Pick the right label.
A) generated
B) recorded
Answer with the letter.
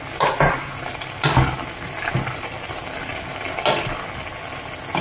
B